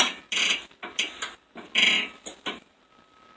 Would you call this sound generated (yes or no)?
no